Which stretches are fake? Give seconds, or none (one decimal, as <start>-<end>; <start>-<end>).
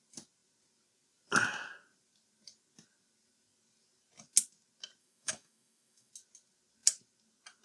5.0-6.1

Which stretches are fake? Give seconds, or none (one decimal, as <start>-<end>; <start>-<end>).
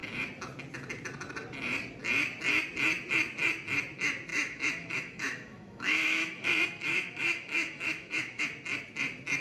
4.3-8.4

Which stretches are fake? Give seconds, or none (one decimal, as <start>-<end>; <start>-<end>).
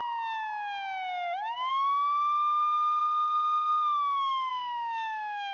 1.7-5.5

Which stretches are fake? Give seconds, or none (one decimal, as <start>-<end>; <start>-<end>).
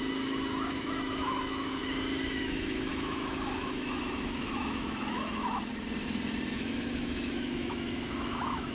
0.0-1.8; 2.4-5.7; 6.5-8.7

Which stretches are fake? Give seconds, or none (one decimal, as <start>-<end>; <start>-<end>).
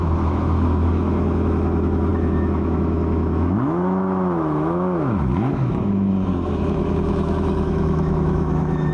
0.0-8.9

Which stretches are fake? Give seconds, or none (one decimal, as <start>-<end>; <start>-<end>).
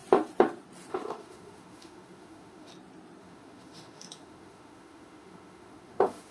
0.9-2.7; 3.2-6.3